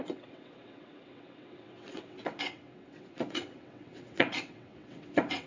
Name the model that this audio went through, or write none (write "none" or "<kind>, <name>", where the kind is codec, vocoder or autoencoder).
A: vocoder, WaveNeXt